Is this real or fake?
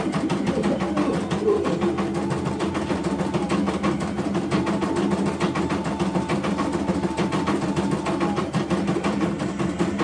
real